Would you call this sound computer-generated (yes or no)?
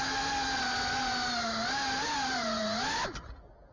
no